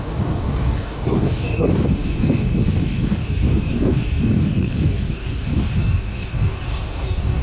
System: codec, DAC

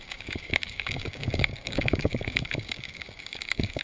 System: codec, DAC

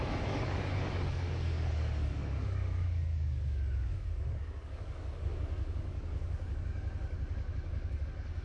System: codec, DAC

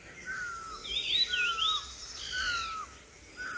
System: none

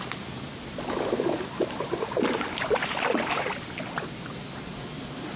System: none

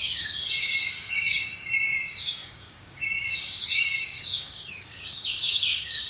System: codec, DAC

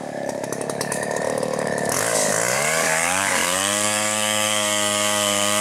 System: codec, DAC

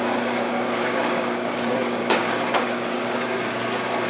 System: codec, DAC